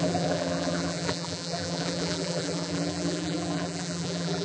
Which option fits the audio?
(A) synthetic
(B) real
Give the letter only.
A